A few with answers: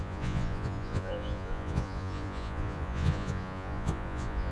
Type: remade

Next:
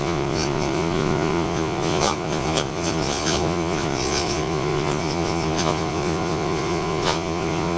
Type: remade